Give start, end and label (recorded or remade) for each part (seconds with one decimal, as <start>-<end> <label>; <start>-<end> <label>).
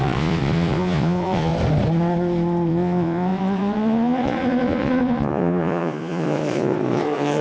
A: 0.0-1.5 remade; 1.5-2.7 recorded; 2.7-7.4 remade